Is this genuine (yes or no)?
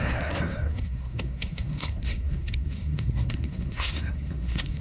no